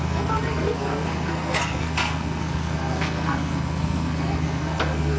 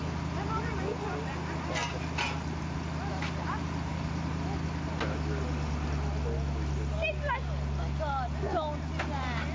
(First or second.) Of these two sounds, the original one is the second